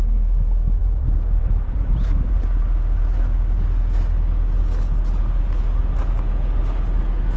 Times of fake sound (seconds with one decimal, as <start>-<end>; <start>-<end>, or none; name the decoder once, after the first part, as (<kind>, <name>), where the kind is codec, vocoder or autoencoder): 0.8-2.4 (vocoder, BigVGAN v2)